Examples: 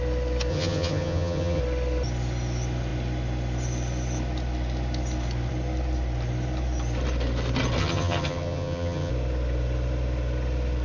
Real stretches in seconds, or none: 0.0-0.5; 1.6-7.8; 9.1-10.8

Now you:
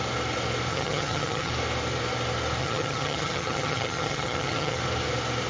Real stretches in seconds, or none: 0.0-0.7; 1.5-2.6; 4.8-5.5